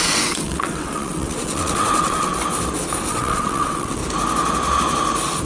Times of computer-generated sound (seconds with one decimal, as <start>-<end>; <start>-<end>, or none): 0.0-2.3; 3.1-4.0